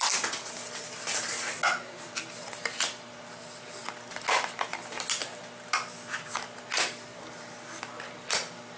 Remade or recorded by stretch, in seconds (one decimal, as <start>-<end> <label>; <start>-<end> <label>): 0.0-8.8 recorded